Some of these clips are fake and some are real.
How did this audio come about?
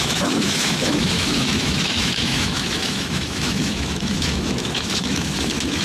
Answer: fake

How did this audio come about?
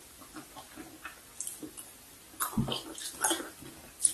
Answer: real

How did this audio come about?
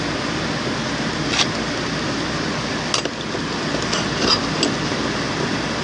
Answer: real